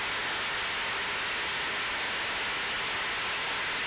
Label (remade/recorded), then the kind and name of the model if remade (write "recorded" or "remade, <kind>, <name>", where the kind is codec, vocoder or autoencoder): recorded